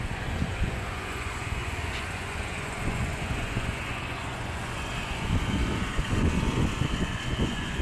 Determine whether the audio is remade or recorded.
remade